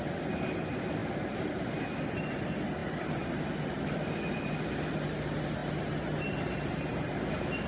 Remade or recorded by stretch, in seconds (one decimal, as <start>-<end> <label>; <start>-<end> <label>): 0.0-1.0 recorded; 1.0-1.8 remade; 1.8-2.8 recorded; 2.8-4.7 remade; 4.7-7.7 recorded